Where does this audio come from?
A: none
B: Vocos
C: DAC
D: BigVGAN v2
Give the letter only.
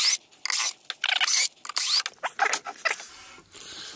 A